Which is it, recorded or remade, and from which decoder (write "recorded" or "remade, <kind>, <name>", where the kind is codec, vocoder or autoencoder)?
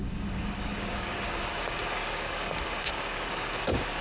remade, codec, DAC